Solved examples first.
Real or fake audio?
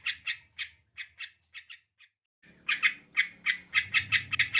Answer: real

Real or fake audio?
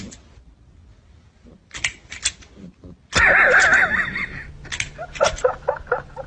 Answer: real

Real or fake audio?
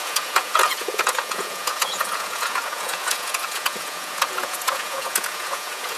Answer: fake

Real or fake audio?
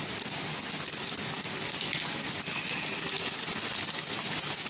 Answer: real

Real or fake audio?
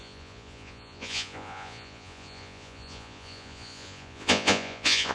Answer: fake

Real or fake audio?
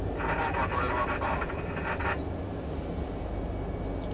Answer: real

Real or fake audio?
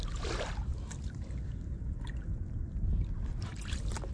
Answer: real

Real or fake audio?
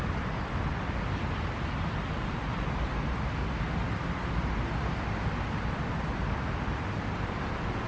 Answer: real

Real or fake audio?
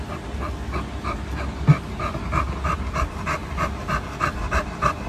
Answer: real